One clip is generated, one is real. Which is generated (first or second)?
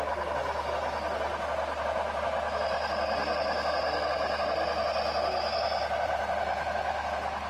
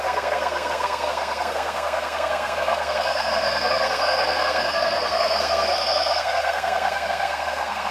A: second